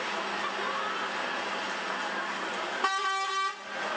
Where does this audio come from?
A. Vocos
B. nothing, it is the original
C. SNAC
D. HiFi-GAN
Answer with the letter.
B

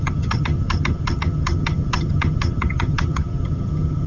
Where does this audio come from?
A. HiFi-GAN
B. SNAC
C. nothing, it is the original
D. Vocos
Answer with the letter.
A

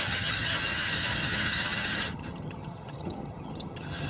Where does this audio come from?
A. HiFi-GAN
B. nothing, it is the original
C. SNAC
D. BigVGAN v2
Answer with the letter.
A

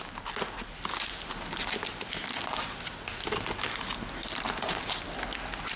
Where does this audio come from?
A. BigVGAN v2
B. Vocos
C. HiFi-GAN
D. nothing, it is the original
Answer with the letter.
D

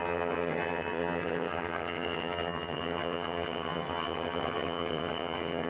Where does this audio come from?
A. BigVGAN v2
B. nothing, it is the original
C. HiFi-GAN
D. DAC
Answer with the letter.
C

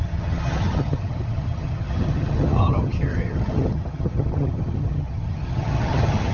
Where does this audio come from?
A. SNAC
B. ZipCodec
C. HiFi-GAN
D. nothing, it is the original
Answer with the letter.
C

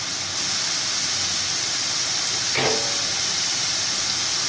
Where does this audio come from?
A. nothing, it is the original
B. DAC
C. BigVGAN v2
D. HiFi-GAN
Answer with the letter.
A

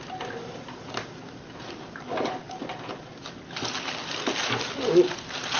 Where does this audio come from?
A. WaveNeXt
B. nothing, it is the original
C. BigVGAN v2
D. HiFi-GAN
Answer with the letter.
B